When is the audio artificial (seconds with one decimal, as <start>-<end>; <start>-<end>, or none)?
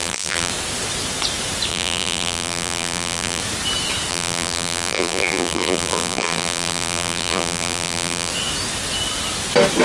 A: 0.0-0.5; 1.7-3.4; 4.1-8.3